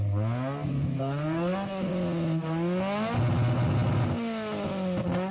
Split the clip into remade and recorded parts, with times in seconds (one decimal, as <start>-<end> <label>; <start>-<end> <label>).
0.0-0.7 recorded; 0.7-1.9 remade; 1.9-5.3 recorded